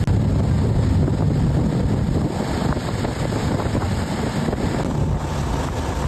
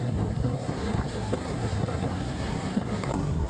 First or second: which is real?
first